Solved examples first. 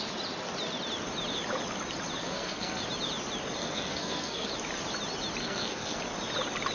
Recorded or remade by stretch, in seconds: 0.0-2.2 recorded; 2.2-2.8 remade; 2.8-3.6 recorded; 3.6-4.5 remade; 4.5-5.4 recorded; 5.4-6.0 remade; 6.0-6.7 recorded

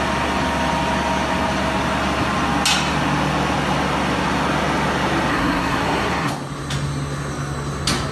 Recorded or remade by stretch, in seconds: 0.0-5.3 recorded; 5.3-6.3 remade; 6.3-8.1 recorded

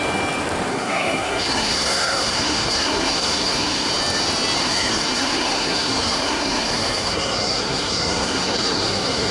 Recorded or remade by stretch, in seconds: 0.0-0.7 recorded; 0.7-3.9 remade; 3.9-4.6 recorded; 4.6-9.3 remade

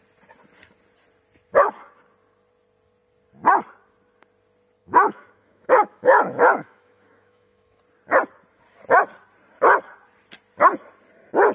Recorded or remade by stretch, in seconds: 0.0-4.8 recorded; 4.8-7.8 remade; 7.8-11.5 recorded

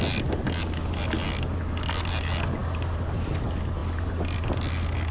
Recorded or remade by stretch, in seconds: 0.0-5.1 recorded

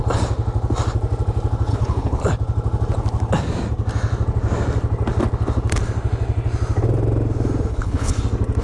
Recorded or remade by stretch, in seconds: 0.0-1.7 recorded; 1.7-2.2 remade; 2.2-7.7 recorded; 7.7-8.2 remade; 8.2-8.6 recorded

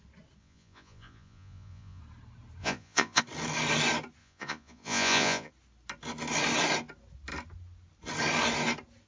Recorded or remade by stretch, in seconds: 0.0-0.4 recorded; 0.4-2.0 remade; 2.0-2.6 recorded; 2.6-3.2 remade; 3.2-4.2 recorded; 4.2-5.5 remade; 5.5-9.1 recorded

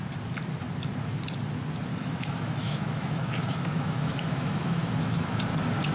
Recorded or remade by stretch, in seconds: 0.0-1.9 recorded; 1.9-5.4 remade; 5.4-5.9 recorded